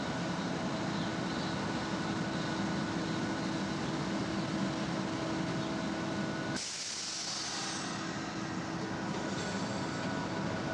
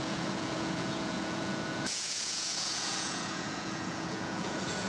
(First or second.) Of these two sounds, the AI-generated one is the second